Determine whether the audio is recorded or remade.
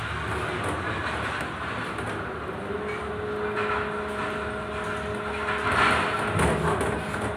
recorded